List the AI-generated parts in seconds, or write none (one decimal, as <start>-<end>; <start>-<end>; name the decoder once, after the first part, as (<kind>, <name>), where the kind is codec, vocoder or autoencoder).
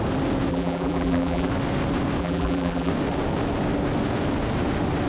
0.5-1.5 (vocoder, BigVGAN v2); 2.2-2.9